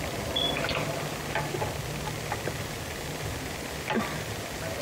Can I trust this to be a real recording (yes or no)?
yes